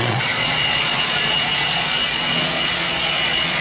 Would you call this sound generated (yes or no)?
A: yes